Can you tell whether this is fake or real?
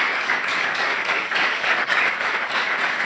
fake